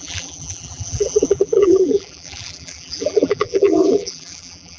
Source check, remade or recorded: remade